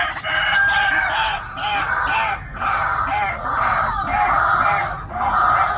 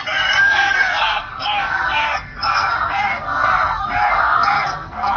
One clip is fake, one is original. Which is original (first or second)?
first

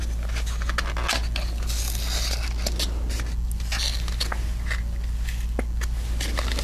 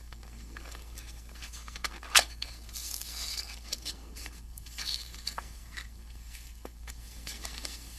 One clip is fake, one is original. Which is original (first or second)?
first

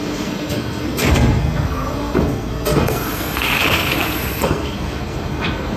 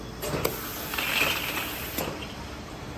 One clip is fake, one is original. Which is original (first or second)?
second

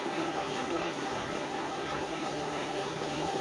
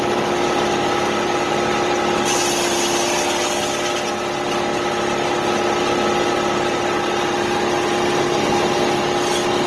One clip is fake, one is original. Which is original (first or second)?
second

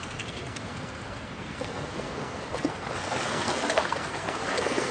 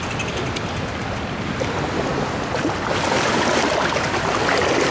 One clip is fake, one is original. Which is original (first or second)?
second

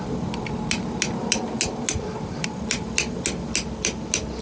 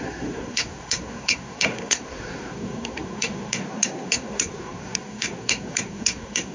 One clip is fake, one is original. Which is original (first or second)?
first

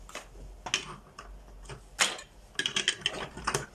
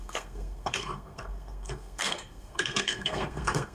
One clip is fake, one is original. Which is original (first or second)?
first